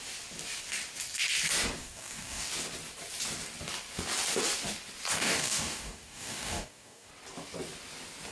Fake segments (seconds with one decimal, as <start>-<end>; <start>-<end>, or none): 1.8-2.5; 5.1-7.1